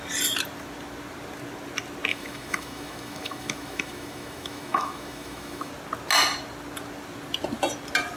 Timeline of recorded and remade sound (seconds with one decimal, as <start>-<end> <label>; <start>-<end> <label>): 0.0-2.1 recorded; 2.1-5.7 remade; 5.7-8.2 recorded